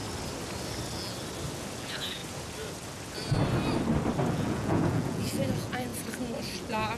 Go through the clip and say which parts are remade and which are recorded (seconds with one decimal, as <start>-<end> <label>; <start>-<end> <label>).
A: 0.0-1.8 recorded; 1.8-2.2 remade; 2.2-4.3 recorded; 4.3-5.9 remade; 5.9-6.6 recorded; 6.6-7.0 remade